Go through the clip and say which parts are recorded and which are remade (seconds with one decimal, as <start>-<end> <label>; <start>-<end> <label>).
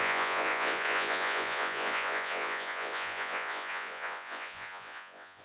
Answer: 0.0-5.4 remade